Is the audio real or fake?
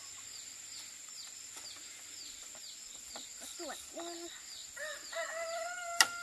real